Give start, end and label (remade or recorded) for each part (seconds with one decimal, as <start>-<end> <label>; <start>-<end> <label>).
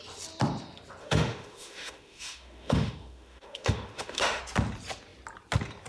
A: 0.0-1.0 recorded; 1.0-4.4 remade; 4.4-5.9 recorded